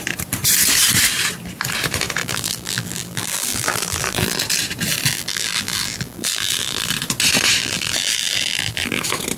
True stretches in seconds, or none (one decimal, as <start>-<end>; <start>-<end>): 0.0-2.2; 4.4-5.1; 6.9-7.6; 9.0-9.4